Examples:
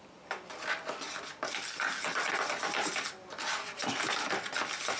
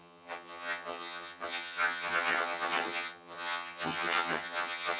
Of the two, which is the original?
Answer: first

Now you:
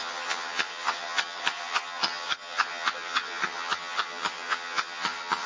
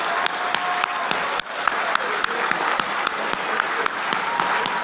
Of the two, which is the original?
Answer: second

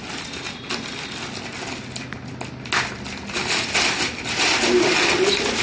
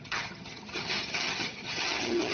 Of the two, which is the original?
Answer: first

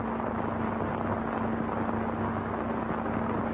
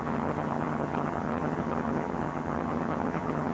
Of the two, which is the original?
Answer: first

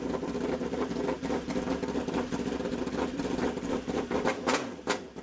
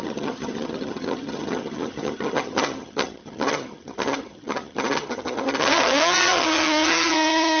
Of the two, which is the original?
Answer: first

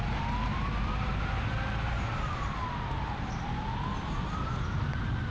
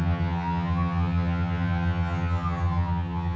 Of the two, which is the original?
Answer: first